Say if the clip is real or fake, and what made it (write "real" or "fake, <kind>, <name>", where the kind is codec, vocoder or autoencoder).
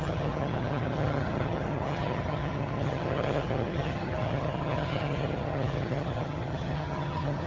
fake, vocoder, HiFi-GAN